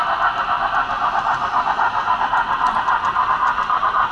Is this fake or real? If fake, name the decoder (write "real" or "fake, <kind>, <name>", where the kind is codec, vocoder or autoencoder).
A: real